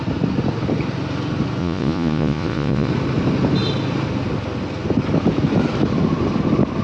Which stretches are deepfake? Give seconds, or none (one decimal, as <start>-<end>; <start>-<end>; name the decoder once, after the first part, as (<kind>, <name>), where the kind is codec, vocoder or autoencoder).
1.6-2.9 (vocoder, Vocos)